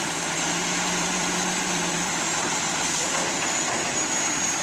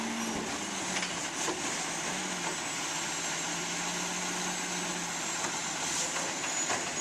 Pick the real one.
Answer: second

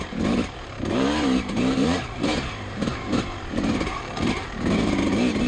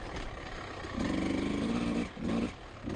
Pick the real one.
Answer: second